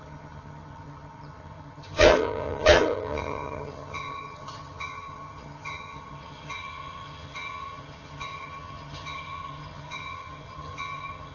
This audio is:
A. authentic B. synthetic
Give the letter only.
B